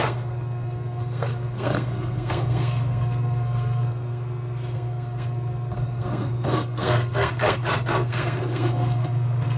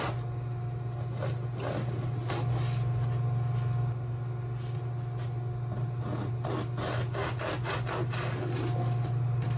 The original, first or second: second